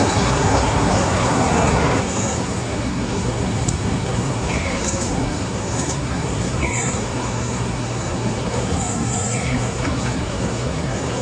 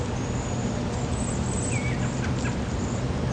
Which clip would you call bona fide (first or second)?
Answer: second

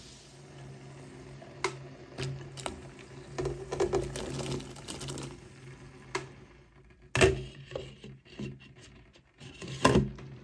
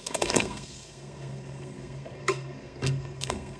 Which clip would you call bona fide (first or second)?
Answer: first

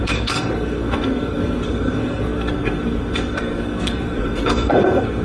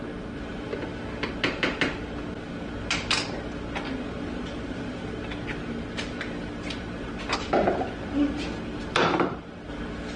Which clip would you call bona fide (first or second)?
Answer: second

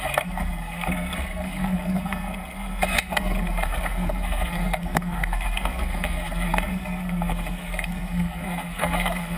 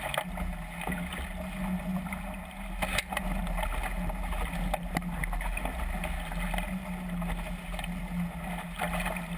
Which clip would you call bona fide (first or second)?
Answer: second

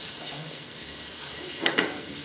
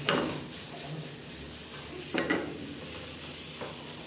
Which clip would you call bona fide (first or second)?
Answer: second